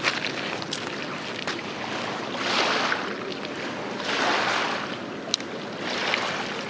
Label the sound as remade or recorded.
recorded